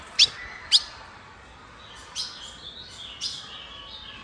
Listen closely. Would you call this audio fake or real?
real